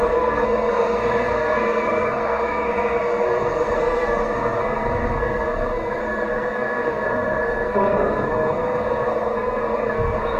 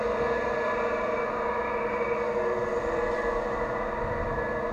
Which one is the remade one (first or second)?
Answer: first